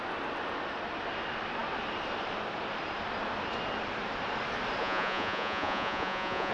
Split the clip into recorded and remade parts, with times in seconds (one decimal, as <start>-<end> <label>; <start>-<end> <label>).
0.0-4.8 recorded; 4.8-6.5 remade